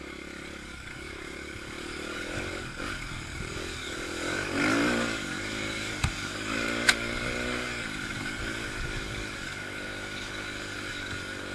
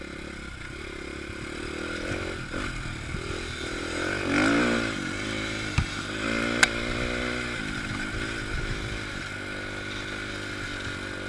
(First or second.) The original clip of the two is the second